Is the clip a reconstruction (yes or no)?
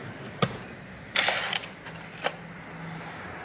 no